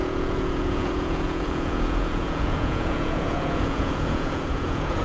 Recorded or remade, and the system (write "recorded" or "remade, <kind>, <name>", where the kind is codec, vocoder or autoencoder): remade, vocoder, Vocos